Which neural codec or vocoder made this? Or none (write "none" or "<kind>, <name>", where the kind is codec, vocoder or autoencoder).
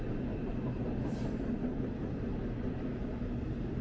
none